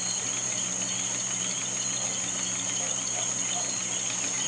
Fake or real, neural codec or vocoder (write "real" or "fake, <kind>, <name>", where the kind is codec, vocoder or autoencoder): real